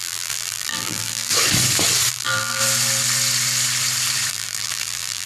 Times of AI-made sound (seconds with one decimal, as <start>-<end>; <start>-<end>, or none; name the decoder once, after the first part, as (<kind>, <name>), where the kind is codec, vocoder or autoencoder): 0.0-1.3 (vocoder, BigVGAN v2); 2.1-2.6; 4.3-5.3